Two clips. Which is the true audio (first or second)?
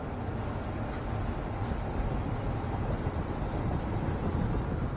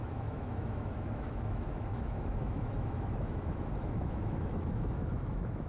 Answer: first